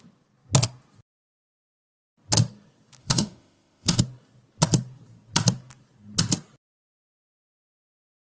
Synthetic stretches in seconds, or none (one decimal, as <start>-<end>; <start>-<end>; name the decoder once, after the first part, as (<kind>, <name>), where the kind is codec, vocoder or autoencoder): 3.0-4.0 (autoencoder, DAC-VAE)